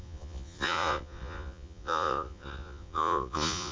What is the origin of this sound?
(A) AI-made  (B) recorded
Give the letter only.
A